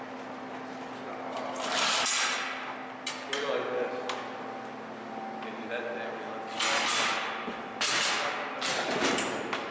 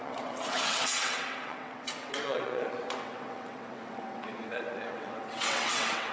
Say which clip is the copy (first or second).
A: second